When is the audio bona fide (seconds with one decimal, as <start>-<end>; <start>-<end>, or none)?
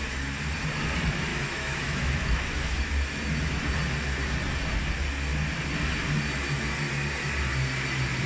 0.0-1.3; 2.9-8.3